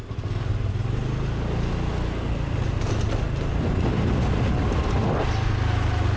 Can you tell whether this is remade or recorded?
recorded